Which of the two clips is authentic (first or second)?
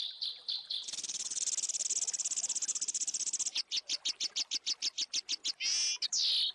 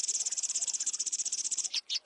first